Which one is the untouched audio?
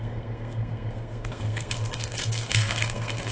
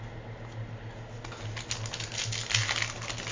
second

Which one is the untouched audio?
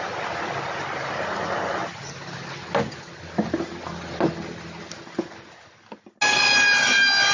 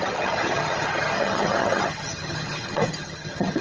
first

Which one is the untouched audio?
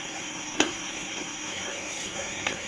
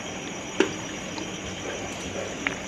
second